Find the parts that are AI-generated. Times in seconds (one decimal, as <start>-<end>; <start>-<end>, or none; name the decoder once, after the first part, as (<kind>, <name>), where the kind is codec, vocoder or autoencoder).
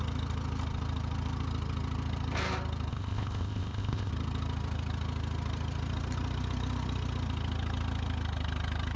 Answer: 2.9-4.1 (codec, ZipCodec)